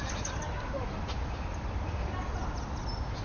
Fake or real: real